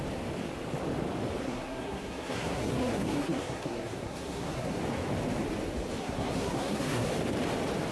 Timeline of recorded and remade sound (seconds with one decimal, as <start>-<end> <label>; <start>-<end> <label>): 0.0-1.4 recorded; 1.4-4.8 remade; 4.8-6.0 recorded; 6.0-7.1 remade; 7.1-7.9 recorded